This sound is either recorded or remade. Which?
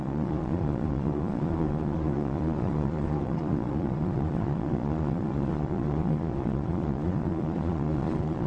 remade